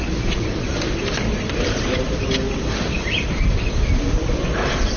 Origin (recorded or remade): remade